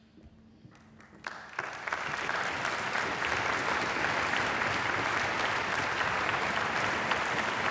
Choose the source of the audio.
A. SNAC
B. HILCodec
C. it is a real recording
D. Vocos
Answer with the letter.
C